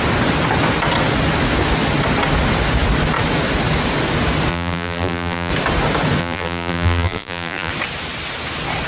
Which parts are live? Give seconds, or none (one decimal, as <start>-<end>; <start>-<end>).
0.0-4.5; 5.5-6.2; 7.7-8.9

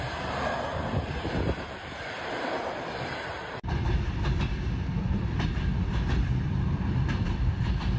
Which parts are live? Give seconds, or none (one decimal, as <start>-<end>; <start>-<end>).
none